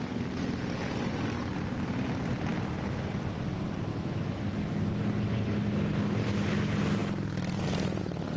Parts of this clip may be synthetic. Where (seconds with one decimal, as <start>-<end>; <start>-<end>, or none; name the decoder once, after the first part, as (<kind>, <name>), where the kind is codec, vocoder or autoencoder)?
2.5-3.1 (autoencoder, DAC-VAE); 3.9-4.9